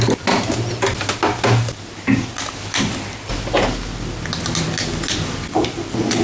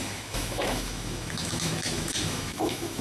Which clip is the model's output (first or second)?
second